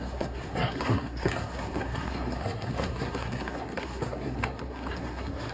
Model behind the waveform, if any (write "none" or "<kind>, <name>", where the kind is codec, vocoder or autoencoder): codec, SNAC